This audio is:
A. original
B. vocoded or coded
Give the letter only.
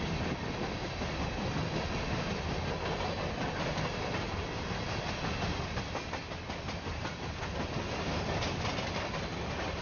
A